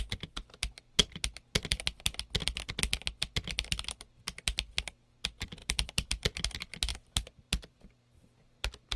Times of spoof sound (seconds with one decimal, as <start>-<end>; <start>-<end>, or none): 5.6-6.5; 6.9-7.9